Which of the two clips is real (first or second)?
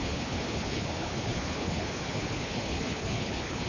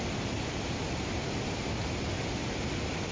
second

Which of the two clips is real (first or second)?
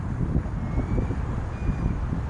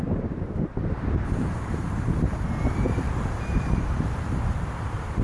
first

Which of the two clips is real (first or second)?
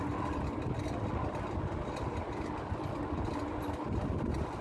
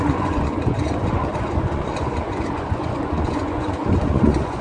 first